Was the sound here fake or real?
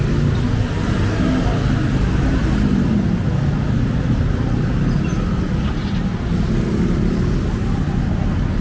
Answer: real